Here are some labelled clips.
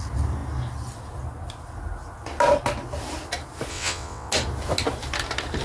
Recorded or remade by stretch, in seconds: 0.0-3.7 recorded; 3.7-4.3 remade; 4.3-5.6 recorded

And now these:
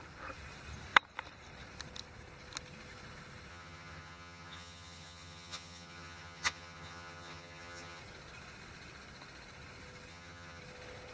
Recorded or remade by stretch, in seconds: 0.0-3.5 recorded; 3.5-8.0 remade; 8.0-10.1 recorded; 10.1-10.6 remade; 10.6-11.1 recorded

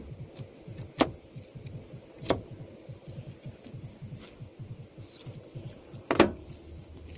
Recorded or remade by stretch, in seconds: 0.0-7.2 recorded

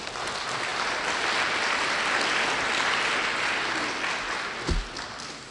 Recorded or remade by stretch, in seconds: 0.0-5.5 recorded

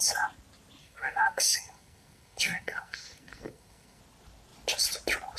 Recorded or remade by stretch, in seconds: 0.0-0.8 recorded; 0.8-4.0 remade; 4.0-5.4 recorded

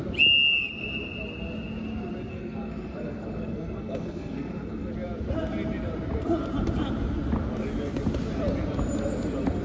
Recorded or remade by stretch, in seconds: 0.0-2.3 recorded; 2.3-4.9 remade; 4.9-9.6 recorded

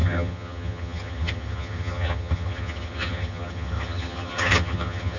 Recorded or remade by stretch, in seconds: 0.0-5.2 remade

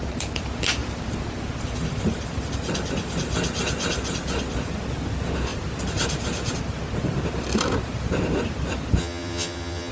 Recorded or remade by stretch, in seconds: 0.0-9.0 recorded; 9.0-9.9 remade